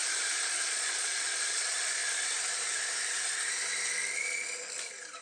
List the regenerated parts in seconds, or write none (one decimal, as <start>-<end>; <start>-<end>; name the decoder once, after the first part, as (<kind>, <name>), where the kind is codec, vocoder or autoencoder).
0.5-2.0 (vocoder, Vocos)